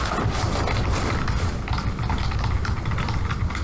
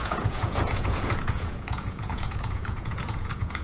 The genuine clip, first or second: first